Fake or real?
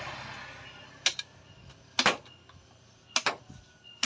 real